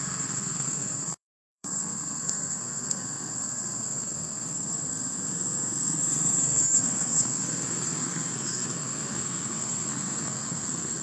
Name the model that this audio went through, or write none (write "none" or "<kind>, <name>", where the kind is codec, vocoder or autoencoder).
codec, SNAC